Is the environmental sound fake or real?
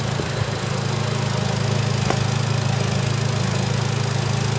real